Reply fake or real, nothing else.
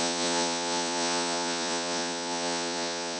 fake